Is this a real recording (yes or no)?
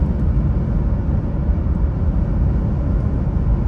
yes